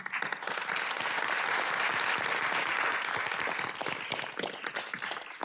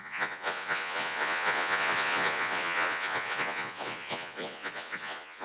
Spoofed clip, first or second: second